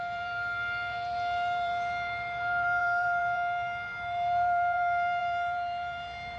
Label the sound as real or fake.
fake